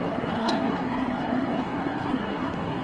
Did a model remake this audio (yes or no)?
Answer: yes